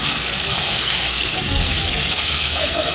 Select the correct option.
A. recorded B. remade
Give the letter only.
B